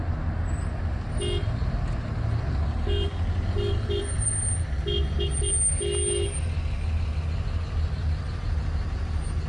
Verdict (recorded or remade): recorded